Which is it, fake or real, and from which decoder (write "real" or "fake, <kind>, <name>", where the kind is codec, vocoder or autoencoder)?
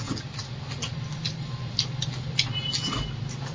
real